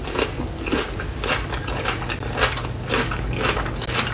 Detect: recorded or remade recorded